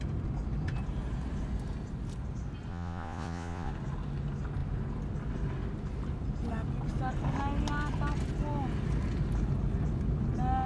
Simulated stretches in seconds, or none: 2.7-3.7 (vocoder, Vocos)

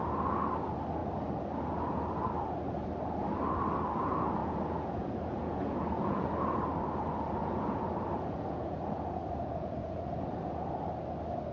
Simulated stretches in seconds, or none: 4.4-6.3 (vocoder, Vocos); 7.4-10.6

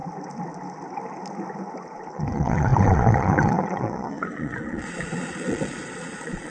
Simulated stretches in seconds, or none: 2.1-6.5 (vocoder, Vocos)

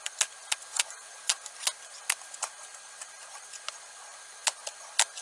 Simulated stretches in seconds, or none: none

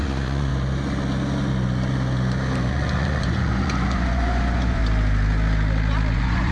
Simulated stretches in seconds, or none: 0.0-0.5 (vocoder, Vocos); 2.7-4.8; 6.1-6.5

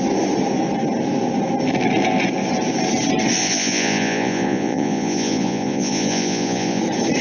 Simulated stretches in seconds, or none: 3.4-6.8 (vocoder, Vocos)

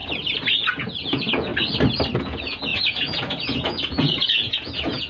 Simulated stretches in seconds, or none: 0.5-1.5 (vocoder, Vocos); 2.2-5.1